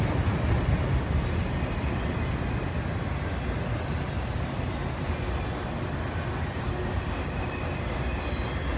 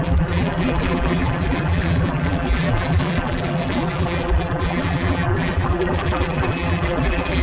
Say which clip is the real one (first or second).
first